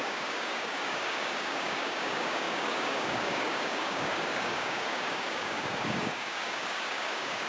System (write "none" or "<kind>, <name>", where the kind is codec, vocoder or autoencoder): codec, DAC